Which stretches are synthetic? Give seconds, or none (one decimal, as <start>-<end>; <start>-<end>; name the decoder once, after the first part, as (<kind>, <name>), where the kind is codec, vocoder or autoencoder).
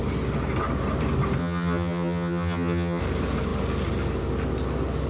1.4-3.0 (vocoder, HiFi-GAN)